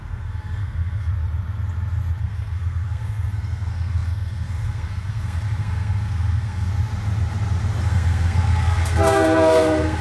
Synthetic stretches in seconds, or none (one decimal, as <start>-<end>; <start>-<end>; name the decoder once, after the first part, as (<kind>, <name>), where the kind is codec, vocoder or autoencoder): 0.0-1.1 (codec, SNAC); 2.2-6.7; 7.8-10.0